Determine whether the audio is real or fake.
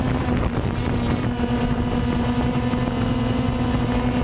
real